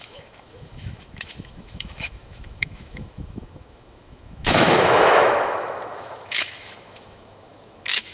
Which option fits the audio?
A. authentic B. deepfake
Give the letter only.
B